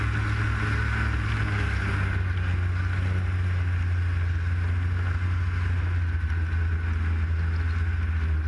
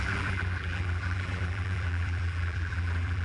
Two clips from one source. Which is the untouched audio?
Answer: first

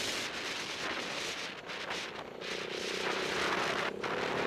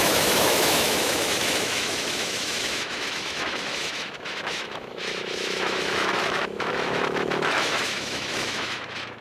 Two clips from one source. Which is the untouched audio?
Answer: first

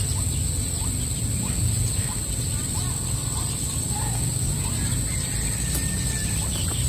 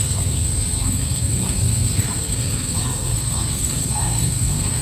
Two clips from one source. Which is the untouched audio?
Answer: first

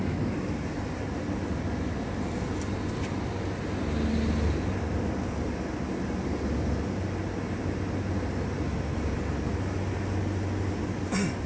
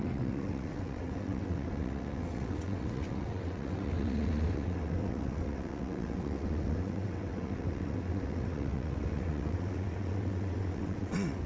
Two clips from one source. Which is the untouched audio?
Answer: first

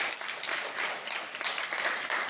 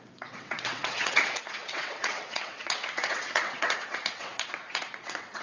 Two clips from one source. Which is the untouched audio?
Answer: first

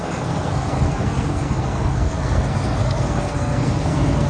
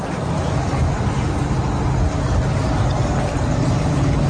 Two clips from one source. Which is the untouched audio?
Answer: second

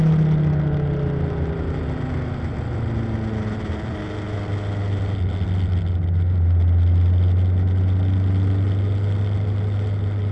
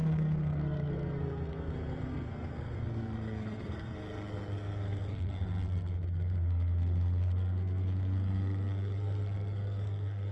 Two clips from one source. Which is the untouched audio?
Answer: first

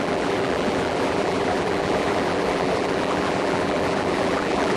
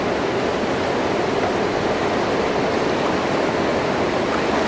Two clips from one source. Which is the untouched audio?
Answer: second